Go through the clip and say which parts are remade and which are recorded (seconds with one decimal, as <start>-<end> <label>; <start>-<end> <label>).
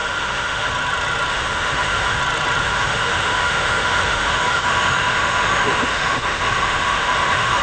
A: 0.0-0.7 remade; 0.7-1.3 recorded; 1.3-2.2 remade; 2.2-2.6 recorded; 2.6-7.6 remade